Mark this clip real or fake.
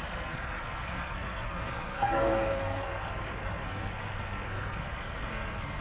fake